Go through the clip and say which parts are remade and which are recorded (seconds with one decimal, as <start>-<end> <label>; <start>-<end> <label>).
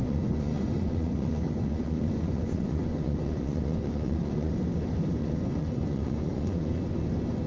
0.0-4.5 remade; 4.5-5.2 recorded; 5.2-6.9 remade; 6.9-7.5 recorded